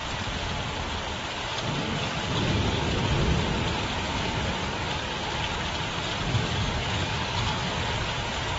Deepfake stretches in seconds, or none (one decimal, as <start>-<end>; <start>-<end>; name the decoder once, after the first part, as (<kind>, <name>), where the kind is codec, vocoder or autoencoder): 2.0-3.0 (codec, DAC); 4.6-5.4; 6.3-7.6

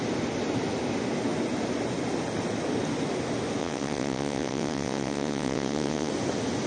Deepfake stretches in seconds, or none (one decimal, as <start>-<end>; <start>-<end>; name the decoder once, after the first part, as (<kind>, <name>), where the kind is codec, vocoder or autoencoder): 3.6-6.1 (vocoder, WaveNeXt)

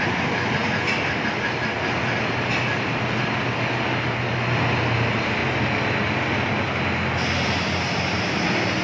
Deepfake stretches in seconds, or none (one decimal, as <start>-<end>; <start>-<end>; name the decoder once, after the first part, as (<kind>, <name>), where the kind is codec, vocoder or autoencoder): none

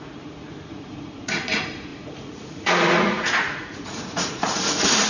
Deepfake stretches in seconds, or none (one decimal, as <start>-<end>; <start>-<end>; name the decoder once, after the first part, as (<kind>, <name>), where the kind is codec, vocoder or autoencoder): 0.0-5.1 (vocoder, Vocos)

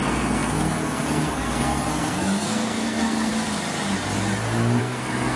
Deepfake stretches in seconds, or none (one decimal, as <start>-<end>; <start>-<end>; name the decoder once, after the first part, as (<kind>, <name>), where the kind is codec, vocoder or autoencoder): 0.0-3.3 (codec, SNAC); 4.8-5.4

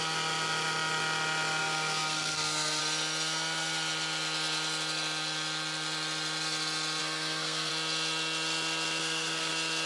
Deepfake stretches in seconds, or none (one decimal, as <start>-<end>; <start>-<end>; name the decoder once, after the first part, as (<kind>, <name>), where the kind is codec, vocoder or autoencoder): 1.6-2.8 (codec, SNAC); 7.0-7.7; 9.0-9.5

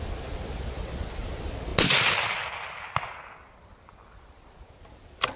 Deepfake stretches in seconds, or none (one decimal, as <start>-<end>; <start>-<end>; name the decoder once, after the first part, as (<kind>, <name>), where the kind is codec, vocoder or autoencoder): none